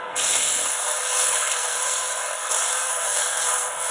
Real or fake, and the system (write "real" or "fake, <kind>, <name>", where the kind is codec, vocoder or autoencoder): fake, codec, SNAC